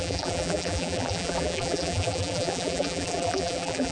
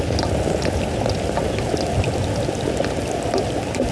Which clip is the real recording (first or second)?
second